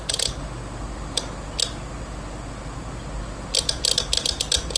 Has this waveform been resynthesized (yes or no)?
no